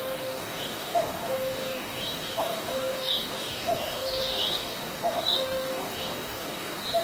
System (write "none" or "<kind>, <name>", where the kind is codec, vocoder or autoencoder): codec, DAC